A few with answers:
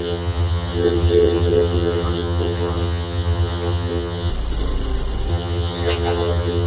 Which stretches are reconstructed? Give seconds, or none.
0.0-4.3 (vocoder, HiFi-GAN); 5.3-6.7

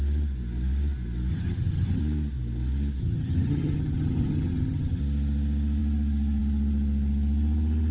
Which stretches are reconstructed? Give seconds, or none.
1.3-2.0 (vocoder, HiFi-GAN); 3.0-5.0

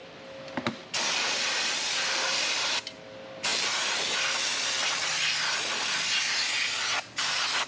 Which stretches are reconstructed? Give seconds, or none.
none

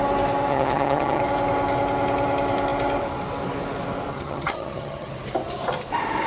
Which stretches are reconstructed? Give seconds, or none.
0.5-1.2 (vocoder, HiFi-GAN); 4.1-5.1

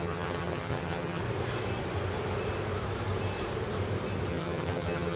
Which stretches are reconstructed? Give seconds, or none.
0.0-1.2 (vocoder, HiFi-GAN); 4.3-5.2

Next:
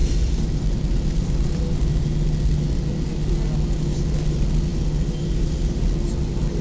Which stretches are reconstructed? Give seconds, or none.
none